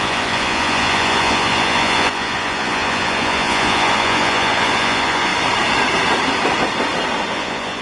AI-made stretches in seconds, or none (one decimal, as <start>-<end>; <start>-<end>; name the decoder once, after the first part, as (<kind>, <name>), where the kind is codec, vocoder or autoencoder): 0.0-5.3 (vocoder, Vocos); 7.3-7.8